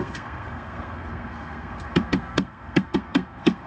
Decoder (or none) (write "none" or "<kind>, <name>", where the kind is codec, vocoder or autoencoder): codec, SNAC